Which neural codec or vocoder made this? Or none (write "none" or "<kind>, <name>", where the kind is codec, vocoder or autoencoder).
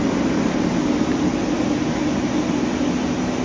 none